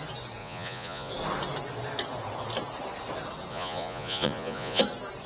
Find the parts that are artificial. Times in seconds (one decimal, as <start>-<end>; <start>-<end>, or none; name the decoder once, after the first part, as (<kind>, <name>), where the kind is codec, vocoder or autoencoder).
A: 0.4-1.1 (vocoder, Vocos); 3.5-4.8